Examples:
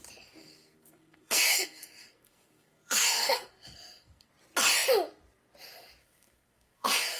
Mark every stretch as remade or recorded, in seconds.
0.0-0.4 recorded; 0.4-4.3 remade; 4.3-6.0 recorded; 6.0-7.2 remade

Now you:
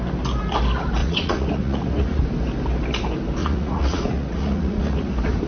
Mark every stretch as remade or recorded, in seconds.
0.0-1.0 recorded; 1.0-2.2 remade; 2.2-3.4 recorded; 3.4-5.1 remade; 5.1-5.5 recorded

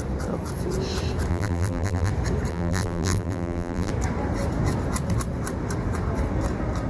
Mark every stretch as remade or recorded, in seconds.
0.0-1.3 recorded; 1.3-2.1 remade; 2.1-2.5 recorded; 2.5-3.9 remade; 3.9-6.9 recorded

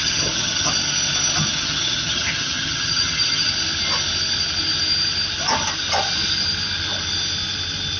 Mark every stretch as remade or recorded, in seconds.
0.0-0.7 remade; 0.7-1.5 recorded; 1.5-3.5 remade; 3.5-8.0 recorded